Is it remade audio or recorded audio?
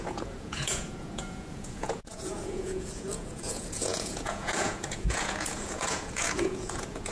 remade